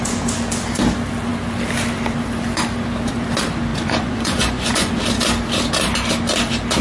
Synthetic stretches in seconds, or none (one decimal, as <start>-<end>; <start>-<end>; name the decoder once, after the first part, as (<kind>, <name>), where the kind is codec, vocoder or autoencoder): 3.7-4.9 (vocoder, Vocos)